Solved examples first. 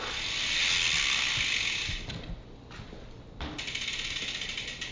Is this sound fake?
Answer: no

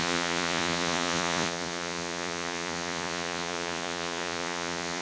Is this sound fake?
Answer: yes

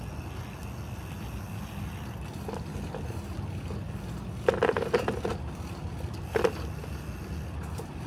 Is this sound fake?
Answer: no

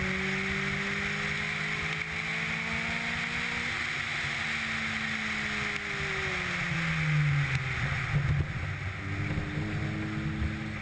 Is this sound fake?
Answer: no